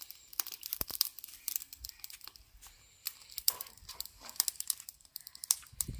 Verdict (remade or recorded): remade